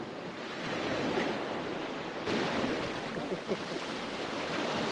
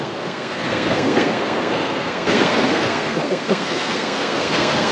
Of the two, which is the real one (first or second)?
first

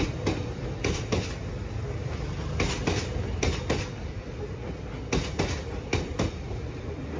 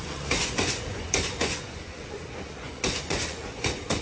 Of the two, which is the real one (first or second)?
first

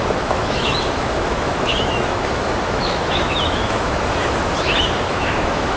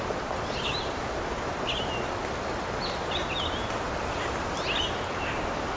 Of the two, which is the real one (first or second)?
second